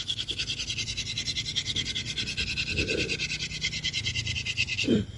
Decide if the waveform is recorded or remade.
recorded